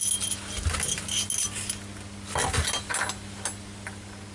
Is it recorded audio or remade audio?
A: recorded